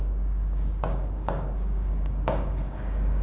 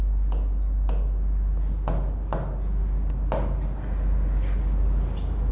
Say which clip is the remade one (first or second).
first